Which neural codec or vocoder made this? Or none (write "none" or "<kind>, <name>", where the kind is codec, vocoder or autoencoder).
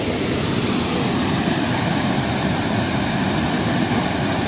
none